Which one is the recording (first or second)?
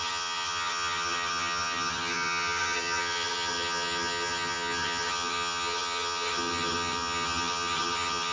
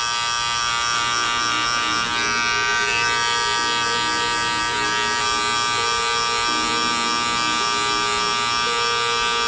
second